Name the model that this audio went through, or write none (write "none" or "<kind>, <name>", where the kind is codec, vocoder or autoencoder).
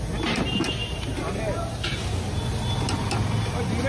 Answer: none